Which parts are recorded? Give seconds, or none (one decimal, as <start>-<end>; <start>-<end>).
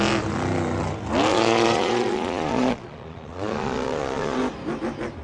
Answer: 0.0-1.3; 4.4-5.2